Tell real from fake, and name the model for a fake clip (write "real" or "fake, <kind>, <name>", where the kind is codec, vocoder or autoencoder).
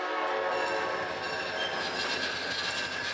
real